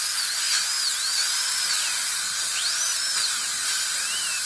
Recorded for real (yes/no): yes